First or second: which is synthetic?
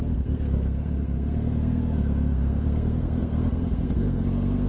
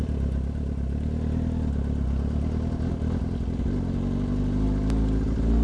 first